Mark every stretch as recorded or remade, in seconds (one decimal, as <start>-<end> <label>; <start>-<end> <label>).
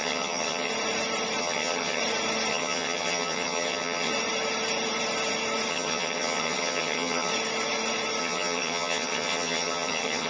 0.0-0.7 remade; 0.7-1.4 recorded; 1.4-2.0 remade; 2.0-2.5 recorded; 2.5-4.1 remade; 4.1-5.7 recorded; 5.7-7.3 remade; 7.3-8.2 recorded; 8.2-10.3 remade